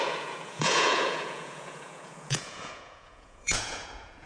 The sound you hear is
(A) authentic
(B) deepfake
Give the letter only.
B